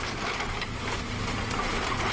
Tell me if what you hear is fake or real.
real